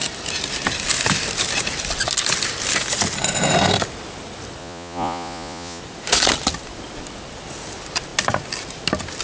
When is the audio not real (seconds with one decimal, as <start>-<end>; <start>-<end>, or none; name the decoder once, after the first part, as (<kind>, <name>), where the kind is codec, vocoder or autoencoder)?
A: 4.6-5.8 (vocoder, Vocos)